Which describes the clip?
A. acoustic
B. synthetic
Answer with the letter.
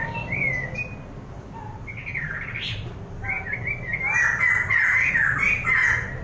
A